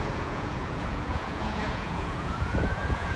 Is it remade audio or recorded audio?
remade